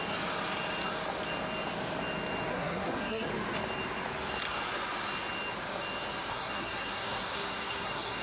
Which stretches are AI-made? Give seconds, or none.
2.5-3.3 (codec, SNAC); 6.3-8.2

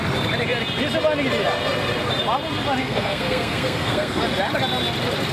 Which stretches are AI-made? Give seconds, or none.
2.8-4.2 (codec, SNAC)

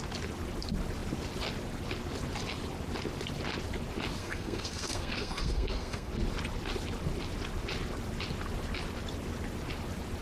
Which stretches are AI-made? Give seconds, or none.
4.2-6.1 (codec, SNAC)